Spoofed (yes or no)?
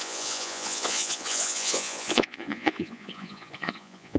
yes